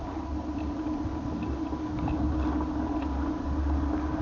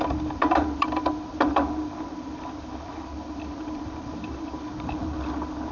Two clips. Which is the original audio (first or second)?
first